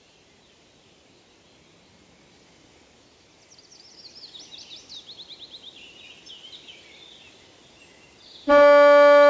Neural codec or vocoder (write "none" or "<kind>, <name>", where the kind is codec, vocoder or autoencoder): none